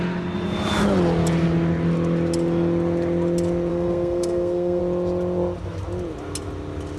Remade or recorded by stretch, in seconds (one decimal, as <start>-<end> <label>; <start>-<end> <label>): 0.0-3.7 recorded; 3.7-4.8 remade; 4.8-7.0 recorded